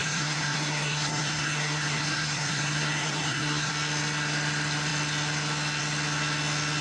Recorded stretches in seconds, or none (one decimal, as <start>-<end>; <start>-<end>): 3.7-6.8

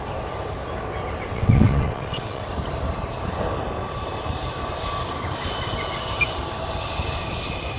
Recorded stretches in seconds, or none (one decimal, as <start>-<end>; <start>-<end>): 0.0-1.3; 2.4-7.8

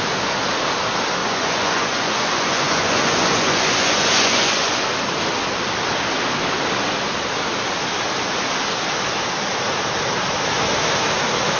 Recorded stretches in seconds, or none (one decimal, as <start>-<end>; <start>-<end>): 0.0-1.2; 4.9-11.6

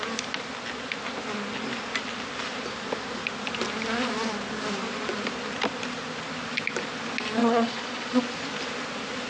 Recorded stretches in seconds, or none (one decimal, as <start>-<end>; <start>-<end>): 0.0-7.4; 8.2-9.3